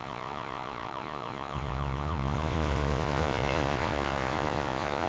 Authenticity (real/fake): fake